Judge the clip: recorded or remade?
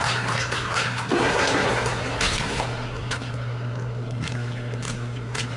remade